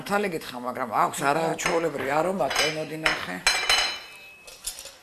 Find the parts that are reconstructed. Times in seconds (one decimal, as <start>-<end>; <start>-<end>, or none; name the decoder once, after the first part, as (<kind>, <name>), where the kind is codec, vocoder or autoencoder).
0.0-1.5 (autoencoder, DAC-VAE); 2.7-3.1